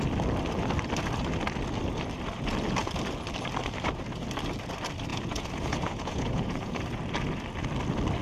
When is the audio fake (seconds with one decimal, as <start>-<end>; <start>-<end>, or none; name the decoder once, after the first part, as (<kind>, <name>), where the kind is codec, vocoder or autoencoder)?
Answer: 5.1-6.8 (vocoder, Vocos)